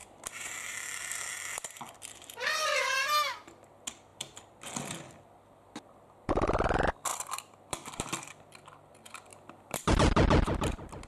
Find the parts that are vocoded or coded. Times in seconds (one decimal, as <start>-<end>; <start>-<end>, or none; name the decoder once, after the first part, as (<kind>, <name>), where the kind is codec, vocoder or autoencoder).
0.0-2.8 (vocoder, BigVGAN v2); 4.1-4.6; 7.1-8.9; 9.3-9.9